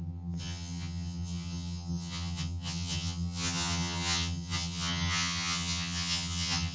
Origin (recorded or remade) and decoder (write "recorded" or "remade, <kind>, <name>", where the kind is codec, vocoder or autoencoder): remade, vocoder, HiFi-GAN